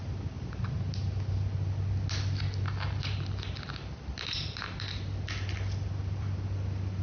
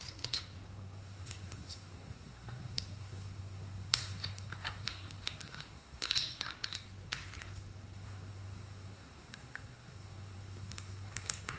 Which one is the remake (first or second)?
second